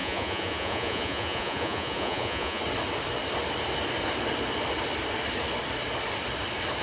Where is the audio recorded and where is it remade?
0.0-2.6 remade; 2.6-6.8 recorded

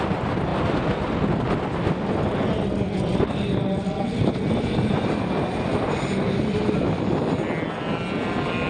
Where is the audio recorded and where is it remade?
0.0-8.7 recorded